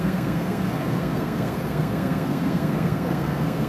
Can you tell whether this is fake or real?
fake